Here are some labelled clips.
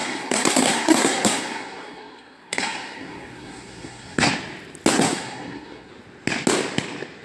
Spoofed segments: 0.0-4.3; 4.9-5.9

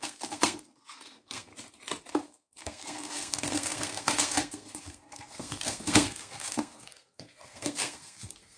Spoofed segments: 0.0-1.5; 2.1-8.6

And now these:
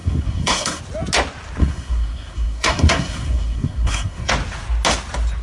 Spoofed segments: 0.0-0.8; 1.6-4.3